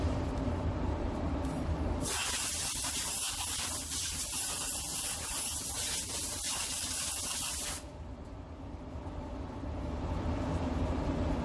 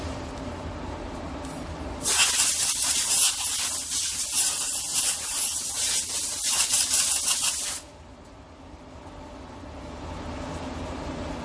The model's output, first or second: first